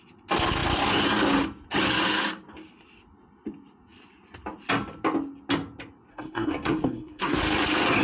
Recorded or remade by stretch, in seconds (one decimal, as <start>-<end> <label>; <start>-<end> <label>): 0.0-6.1 recorded; 6.1-7.4 remade; 7.4-8.0 recorded